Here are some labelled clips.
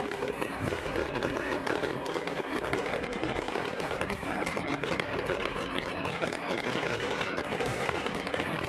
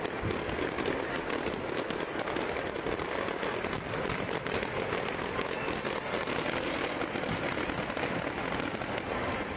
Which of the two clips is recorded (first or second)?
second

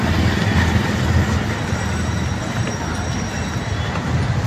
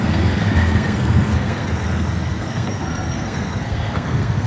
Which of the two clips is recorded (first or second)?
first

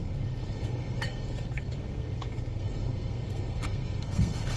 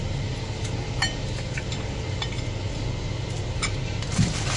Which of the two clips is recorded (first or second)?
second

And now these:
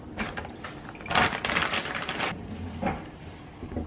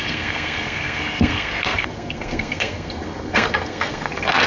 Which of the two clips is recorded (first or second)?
first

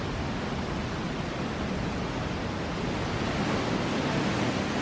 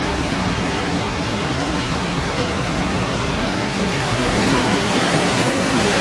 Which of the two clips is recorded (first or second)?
first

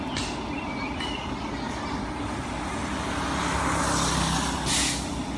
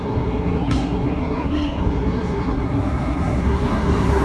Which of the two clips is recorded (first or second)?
first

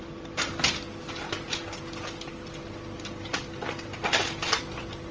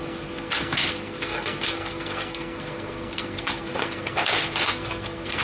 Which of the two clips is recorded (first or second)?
first